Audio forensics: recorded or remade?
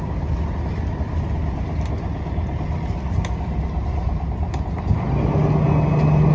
recorded